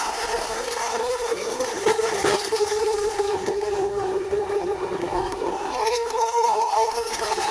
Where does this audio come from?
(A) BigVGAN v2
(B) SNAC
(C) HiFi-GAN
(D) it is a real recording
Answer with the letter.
B